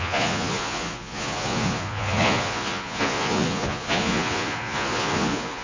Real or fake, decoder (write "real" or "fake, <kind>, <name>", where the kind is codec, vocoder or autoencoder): fake, vocoder, Vocos